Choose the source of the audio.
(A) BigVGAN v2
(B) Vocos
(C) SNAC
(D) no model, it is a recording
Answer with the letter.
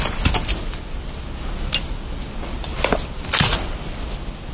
D